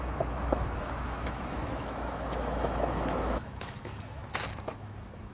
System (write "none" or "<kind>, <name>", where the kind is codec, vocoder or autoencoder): autoencoder, DAC-VAE